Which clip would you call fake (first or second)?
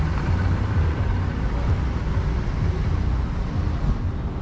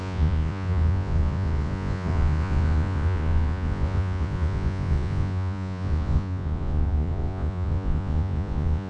second